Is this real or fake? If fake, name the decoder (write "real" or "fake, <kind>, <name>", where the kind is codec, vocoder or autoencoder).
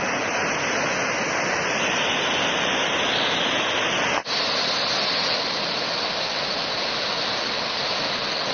real